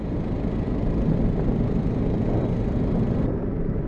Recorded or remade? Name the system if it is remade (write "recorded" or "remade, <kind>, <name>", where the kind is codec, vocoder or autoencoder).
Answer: recorded